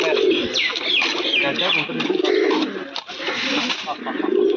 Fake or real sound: real